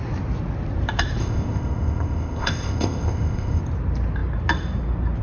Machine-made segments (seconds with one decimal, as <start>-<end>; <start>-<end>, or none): 1.2-3.6